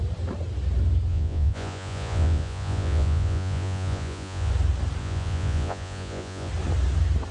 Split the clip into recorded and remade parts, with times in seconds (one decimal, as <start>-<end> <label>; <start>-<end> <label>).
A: 0.0-1.1 recorded; 1.1-4.5 remade; 4.5-5.0 recorded; 5.0-6.5 remade; 6.5-7.3 recorded

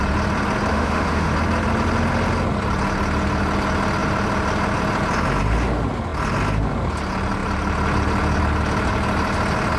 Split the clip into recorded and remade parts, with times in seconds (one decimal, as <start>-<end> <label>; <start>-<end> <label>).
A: 0.0-0.7 recorded; 0.7-1.3 remade; 1.3-9.8 recorded

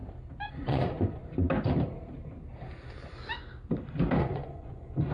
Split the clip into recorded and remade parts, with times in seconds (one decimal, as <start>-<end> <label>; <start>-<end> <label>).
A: 0.0-0.5 recorded; 0.5-1.2 remade; 1.2-4.2 recorded; 4.2-5.1 remade

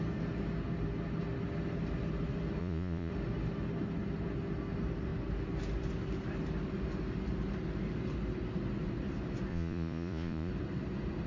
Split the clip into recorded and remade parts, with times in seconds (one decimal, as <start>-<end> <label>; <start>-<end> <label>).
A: 0.0-2.6 recorded; 2.6-3.1 remade; 3.1-9.5 recorded; 9.5-10.5 remade; 10.5-11.3 recorded